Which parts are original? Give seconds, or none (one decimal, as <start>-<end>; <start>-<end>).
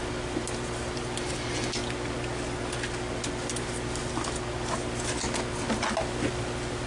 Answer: 0.0-6.9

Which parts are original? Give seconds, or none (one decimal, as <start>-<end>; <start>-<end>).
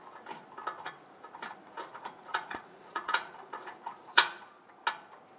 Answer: 0.0-1.6; 4.8-5.4